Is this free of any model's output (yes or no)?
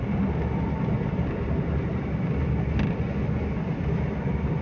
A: yes